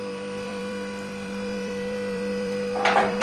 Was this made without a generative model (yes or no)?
no